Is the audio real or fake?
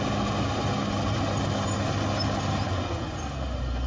real